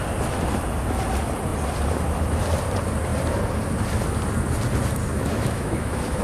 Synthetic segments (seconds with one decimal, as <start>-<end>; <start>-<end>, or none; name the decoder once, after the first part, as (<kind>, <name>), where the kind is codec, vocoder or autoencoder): 5.1-6.2 (autoencoder, DAC-VAE)